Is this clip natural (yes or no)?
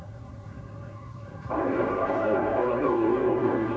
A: no